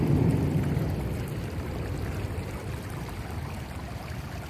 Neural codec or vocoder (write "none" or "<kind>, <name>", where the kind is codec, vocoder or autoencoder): none